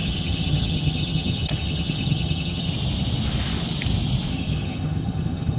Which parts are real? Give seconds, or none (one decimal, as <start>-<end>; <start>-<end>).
2.7-4.3